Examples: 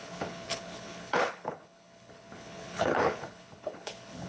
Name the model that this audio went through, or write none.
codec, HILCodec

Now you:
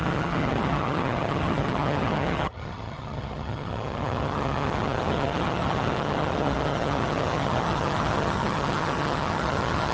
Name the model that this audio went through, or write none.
vocoder, HiFi-GAN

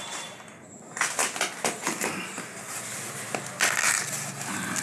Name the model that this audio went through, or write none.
none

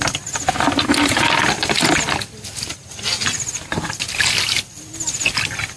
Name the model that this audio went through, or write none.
none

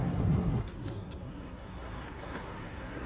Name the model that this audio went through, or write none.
codec, SNAC